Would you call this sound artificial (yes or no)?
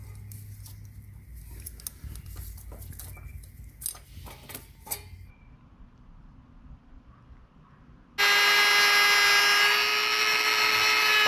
no